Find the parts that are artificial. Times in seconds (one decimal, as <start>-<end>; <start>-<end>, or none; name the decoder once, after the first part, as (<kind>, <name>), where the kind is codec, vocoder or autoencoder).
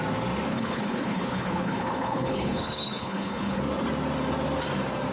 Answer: 0.5-3.6 (codec, HILCodec)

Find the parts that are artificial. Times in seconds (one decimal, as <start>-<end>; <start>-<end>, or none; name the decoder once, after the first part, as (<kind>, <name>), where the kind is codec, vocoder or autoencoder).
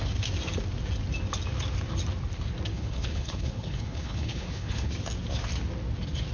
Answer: 2.7-4.9 (codec, HILCodec)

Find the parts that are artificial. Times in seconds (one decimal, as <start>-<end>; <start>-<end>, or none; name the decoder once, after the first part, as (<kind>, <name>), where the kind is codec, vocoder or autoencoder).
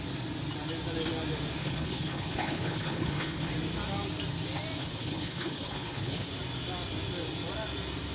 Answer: 1.6-3.5 (codec, HILCodec); 4.8-6.3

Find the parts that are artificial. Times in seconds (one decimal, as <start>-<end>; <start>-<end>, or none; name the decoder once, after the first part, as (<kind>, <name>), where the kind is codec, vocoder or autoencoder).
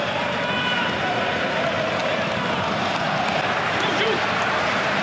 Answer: none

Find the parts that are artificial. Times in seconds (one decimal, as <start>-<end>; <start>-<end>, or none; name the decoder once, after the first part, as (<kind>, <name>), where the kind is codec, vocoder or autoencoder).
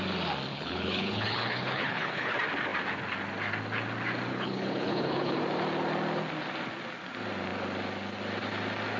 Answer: 0.5-2.3 (codec, HILCodec); 4.3-5.4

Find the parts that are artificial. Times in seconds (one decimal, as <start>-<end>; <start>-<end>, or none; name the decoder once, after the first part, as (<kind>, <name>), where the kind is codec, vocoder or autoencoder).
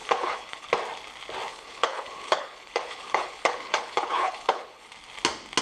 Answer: 0.0-0.7 (codec, HILCodec); 1.5-4.9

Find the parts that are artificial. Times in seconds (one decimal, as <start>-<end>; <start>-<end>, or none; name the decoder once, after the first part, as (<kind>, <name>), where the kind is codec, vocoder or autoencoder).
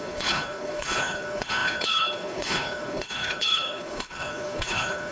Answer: 0.0-5.1 (codec, HILCodec)